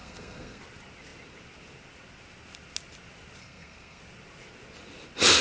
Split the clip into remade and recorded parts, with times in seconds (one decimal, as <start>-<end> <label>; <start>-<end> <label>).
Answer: 0.0-0.6 remade; 0.6-3.4 recorded; 3.4-4.0 remade; 4.0-5.4 recorded